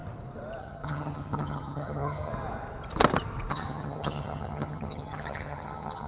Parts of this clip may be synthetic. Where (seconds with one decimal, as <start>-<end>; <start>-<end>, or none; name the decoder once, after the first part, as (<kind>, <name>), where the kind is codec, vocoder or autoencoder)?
0.6-2.3 (vocoder, HiFi-GAN); 3.5-6.1